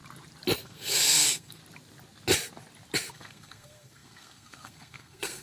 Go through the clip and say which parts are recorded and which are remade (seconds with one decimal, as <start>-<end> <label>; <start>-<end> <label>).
0.0-0.6 recorded; 0.6-1.6 remade; 1.6-3.1 recorded; 3.1-5.4 remade